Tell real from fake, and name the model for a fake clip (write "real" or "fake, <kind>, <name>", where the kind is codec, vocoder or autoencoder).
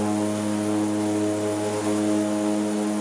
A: real